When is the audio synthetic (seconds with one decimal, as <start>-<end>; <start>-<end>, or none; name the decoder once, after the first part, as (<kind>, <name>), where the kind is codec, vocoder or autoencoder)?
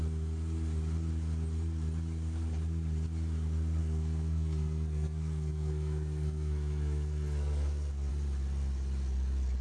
3.8-8.1 (codec, SNAC)